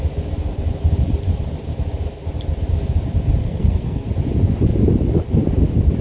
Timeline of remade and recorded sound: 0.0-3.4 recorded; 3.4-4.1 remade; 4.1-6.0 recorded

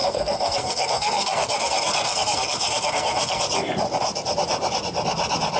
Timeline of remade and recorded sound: 0.0-3.4 remade; 3.4-5.6 recorded

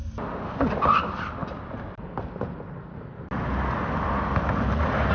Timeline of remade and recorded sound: 0.0-5.1 recorded

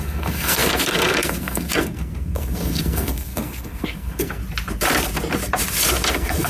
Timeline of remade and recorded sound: 0.0-4.4 remade; 4.4-6.1 recorded; 6.1-6.5 remade

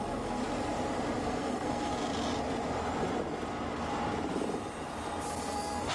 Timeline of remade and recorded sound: 0.0-0.4 remade; 0.4-1.2 recorded; 1.2-1.9 remade; 1.9-5.4 recorded; 5.4-5.9 remade

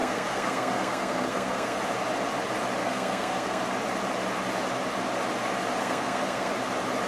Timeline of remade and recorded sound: 0.0-1.8 remade; 1.8-2.8 recorded; 2.8-3.6 remade; 3.6-5.8 recorded; 5.8-6.5 remade; 6.5-7.1 recorded

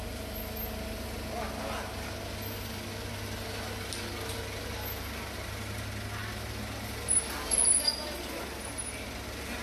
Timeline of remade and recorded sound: 0.0-9.6 recorded

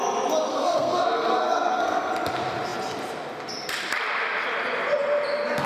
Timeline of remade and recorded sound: 0.0-0.5 recorded; 0.5-2.1 remade; 2.1-5.7 recorded